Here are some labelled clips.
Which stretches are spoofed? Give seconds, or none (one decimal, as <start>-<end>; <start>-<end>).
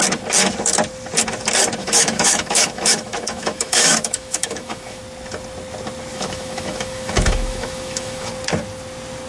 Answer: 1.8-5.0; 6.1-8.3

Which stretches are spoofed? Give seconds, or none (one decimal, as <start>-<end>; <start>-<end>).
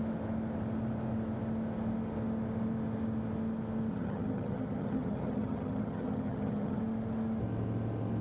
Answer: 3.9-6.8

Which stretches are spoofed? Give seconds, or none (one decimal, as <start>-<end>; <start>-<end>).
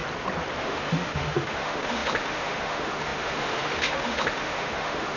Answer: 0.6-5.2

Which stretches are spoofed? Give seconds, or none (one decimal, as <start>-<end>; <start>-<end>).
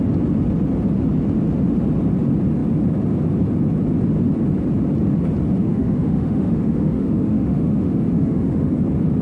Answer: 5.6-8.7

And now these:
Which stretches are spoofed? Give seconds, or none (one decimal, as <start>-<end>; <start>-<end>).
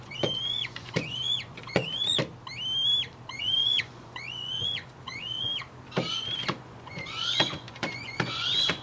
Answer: 0.0-2.2; 3.4-5.5; 6.1-8.8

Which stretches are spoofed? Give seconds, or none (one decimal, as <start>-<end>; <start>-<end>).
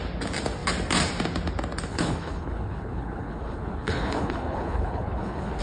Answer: 1.9-5.6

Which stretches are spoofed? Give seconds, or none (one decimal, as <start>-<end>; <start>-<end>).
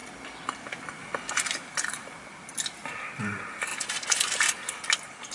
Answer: none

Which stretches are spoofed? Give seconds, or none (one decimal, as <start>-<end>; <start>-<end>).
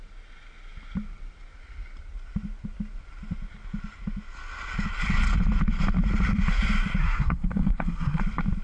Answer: 7.0-8.2